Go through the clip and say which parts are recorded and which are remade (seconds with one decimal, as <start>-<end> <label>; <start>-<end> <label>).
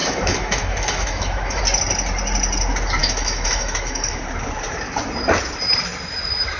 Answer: 0.0-1.6 remade; 1.6-3.0 recorded; 3.0-4.2 remade; 4.2-6.6 recorded